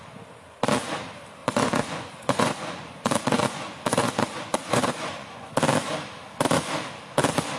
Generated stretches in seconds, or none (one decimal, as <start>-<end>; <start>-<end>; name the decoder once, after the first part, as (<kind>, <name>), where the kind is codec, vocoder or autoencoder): 1.4-5.5 (vocoder, Vocos)